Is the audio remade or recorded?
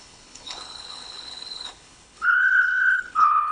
remade